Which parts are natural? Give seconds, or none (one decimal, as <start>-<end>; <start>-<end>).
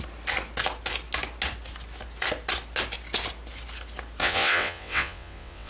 0.0-4.2